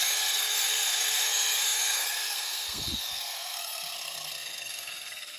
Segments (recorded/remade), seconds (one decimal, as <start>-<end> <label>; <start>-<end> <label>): 0.0-5.4 remade